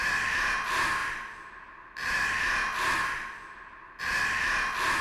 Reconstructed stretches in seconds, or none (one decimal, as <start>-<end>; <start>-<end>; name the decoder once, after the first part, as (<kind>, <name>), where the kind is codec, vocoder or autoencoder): none